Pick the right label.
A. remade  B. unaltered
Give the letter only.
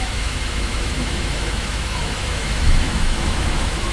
A